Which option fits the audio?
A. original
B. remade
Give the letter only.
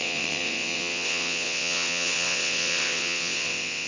B